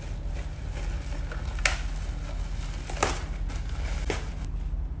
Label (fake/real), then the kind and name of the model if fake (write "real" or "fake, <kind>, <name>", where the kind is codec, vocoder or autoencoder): real